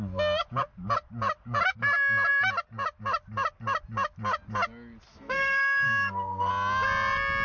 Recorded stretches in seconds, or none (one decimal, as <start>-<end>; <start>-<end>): 0.0-5.1; 6.5-7.4